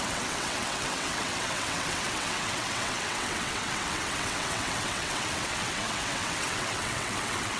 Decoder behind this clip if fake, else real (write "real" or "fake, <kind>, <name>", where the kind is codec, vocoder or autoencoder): fake, vocoder, WaveNeXt